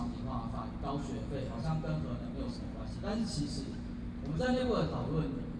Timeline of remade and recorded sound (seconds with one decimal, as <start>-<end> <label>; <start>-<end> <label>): 0.0-5.6 recorded